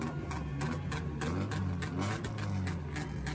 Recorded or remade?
recorded